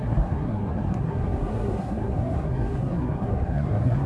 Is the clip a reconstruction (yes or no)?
yes